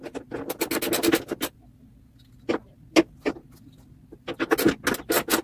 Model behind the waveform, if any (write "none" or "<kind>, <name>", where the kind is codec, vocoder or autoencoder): none